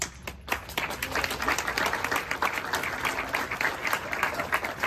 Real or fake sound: real